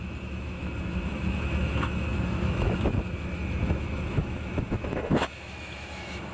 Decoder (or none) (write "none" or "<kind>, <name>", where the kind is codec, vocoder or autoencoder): autoencoder, DAC-VAE